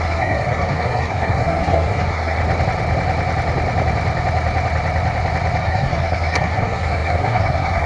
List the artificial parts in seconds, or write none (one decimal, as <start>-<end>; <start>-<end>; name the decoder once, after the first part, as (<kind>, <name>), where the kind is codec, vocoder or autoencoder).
0.0-2.4 (codec, SNAC); 5.6-7.9